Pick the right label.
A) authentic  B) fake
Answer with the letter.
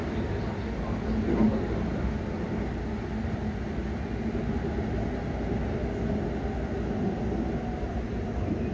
A